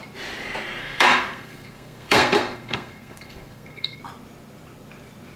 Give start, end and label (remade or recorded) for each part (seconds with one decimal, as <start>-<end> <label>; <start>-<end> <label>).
0.0-0.8 recorded; 0.8-4.0 remade; 4.0-5.4 recorded